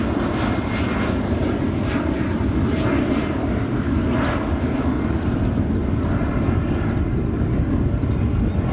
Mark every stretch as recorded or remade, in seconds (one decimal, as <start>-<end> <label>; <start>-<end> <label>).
0.0-8.7 recorded